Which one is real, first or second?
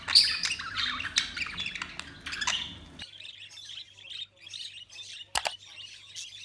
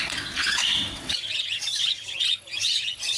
first